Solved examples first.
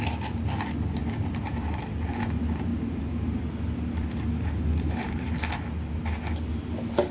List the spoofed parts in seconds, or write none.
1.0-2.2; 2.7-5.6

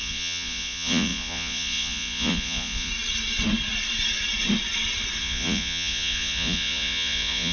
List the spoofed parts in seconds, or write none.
0.0-2.9; 5.2-7.5

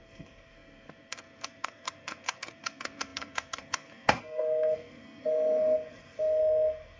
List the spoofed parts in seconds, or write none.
0.0-7.0